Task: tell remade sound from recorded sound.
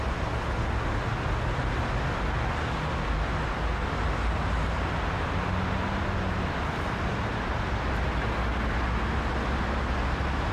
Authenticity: recorded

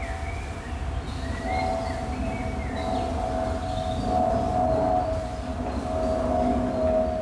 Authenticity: recorded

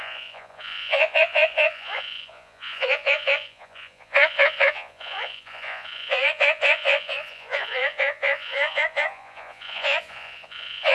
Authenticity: remade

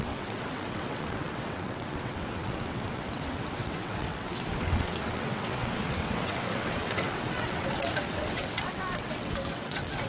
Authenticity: remade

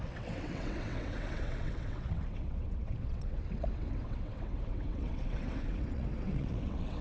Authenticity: remade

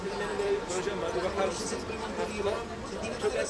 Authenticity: recorded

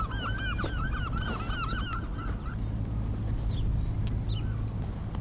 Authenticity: recorded